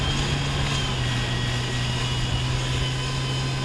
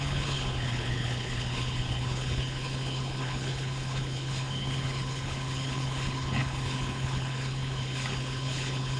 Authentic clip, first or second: first